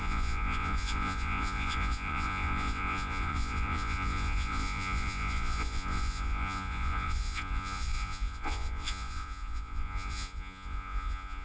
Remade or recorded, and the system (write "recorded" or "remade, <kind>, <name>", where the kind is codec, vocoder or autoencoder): remade, vocoder, Vocos